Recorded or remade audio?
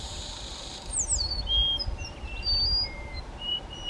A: recorded